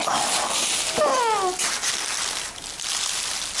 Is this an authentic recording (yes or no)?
yes